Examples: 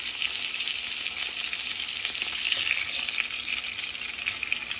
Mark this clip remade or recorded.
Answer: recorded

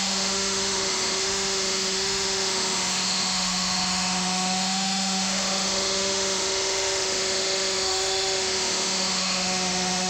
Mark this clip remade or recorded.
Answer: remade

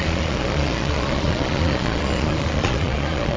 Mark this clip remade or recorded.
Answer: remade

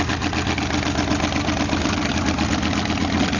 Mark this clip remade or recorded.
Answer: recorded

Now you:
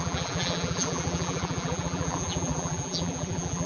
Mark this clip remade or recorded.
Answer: remade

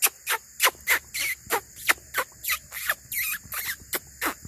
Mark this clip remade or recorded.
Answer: recorded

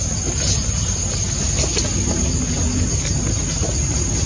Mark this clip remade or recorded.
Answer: recorded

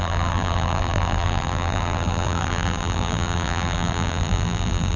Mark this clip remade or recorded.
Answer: remade